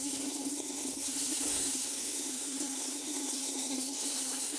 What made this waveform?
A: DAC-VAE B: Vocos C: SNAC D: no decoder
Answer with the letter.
C